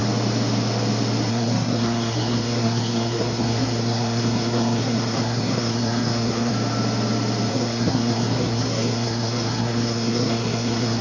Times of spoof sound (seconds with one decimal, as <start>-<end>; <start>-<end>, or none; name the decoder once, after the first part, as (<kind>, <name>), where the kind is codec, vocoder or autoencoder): 1.3-6.5 (codec, SNAC); 7.5-11.0